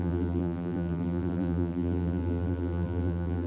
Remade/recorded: remade